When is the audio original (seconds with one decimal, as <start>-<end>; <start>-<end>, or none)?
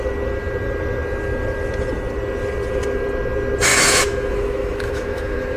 0.0-3.7